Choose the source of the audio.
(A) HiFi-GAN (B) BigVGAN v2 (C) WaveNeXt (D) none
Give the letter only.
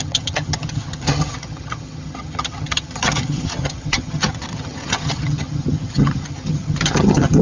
A